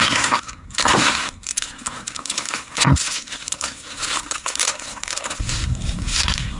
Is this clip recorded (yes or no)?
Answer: no